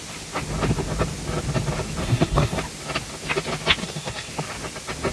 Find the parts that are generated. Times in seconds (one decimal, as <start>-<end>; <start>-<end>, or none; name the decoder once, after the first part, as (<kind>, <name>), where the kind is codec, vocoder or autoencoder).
2.0-2.6 (codec, SNAC); 3.8-4.3